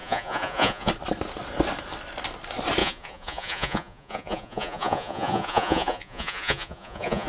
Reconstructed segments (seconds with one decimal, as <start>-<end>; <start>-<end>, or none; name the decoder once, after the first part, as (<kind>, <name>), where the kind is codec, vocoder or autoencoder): 0.0-0.9 (vocoder, Vocos); 2.8-7.3